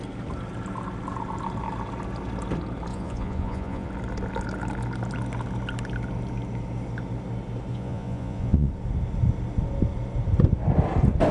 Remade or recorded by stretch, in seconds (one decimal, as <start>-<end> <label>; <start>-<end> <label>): 0.0-2.9 recorded; 2.9-3.9 remade; 3.9-7.7 recorded; 7.7-8.7 remade; 8.7-11.3 recorded